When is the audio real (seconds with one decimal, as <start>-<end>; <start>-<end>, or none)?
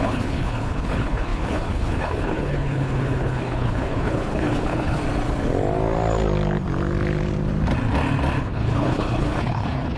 5.0-8.4